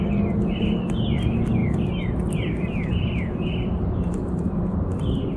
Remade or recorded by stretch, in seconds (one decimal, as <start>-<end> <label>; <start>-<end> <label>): 0.0-5.4 recorded